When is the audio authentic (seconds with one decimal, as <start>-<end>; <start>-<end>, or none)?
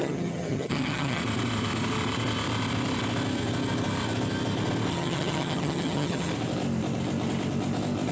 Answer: 1.2-4.9; 6.3-8.1